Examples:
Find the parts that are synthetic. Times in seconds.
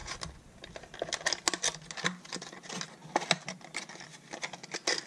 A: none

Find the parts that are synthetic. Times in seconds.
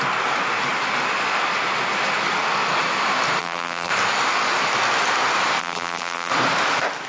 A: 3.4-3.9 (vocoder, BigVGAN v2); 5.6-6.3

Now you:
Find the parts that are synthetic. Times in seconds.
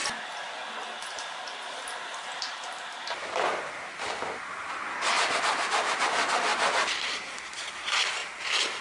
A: none